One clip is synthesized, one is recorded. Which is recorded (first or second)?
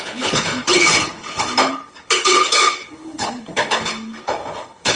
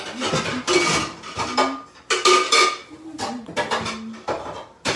second